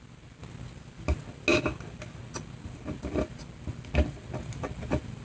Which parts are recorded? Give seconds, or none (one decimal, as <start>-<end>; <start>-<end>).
0.0-5.2

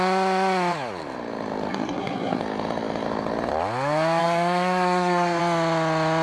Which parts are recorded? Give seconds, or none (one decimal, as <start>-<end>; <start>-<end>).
0.0-1.7; 2.4-4.2; 5.4-6.2

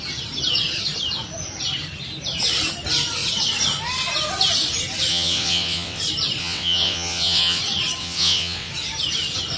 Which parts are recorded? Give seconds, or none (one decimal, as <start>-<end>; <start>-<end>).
0.0-5.1; 6.0-6.4; 7.6-8.0; 8.7-9.6

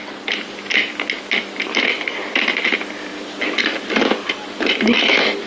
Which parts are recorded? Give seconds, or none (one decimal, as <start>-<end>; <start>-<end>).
0.0-5.5

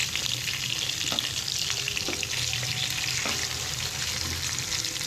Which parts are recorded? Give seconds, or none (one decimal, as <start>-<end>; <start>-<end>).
0.0-5.1